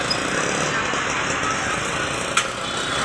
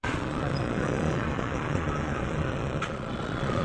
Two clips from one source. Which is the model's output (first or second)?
second